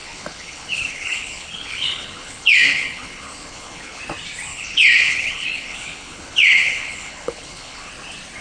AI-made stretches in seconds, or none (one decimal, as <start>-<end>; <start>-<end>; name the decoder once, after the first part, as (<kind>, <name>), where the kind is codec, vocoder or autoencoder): 0.0-4.0 (codec, HILCodec); 4.5-7.9